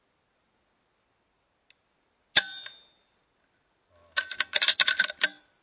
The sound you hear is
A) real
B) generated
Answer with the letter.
A